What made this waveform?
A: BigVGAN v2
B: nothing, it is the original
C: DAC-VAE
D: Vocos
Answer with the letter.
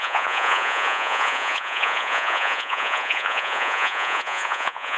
D